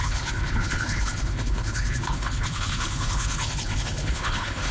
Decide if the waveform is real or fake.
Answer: fake